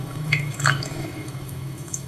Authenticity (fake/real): fake